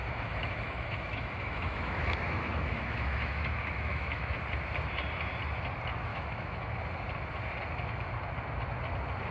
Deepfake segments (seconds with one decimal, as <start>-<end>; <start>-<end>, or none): 0.0-4.4; 6.1-6.8